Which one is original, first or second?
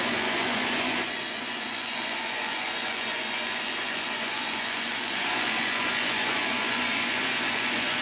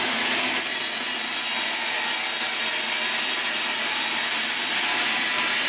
second